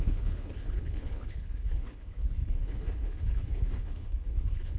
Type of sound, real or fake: fake